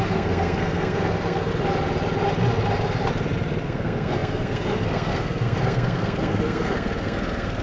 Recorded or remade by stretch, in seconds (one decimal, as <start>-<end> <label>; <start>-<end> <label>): 0.0-1.5 remade; 1.5-3.6 recorded; 3.6-7.6 remade